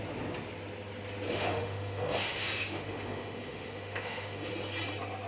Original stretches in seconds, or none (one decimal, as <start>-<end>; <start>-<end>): 0.0-1.3; 4.5-5.3